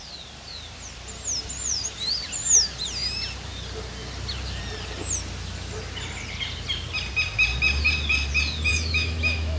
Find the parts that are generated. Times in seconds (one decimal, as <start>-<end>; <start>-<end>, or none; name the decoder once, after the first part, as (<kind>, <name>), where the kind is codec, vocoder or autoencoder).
8.7-9.6 (autoencoder, DAC-VAE)